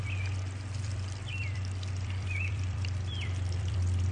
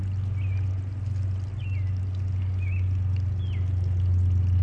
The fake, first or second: first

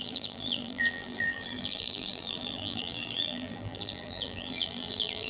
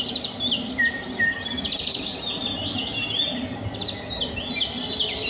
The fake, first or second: first